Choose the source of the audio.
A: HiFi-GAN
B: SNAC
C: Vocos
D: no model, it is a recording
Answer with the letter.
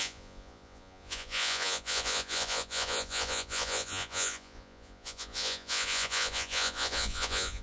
C